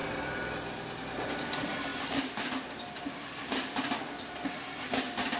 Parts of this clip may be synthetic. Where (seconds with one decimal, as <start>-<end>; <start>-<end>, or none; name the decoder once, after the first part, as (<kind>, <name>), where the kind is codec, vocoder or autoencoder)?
0.0-1.5 (vocoder, BigVGAN v2)